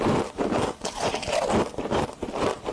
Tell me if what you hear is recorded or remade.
recorded